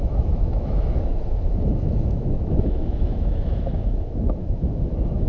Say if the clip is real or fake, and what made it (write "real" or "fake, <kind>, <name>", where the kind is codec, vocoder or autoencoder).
fake, autoencoder, DAC-VAE